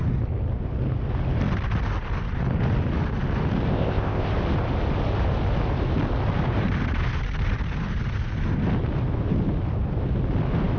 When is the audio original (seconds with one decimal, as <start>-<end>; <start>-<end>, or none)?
0.0-3.7; 4.3-10.8